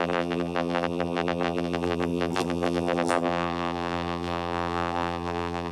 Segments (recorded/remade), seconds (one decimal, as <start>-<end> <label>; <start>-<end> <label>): 0.0-5.7 remade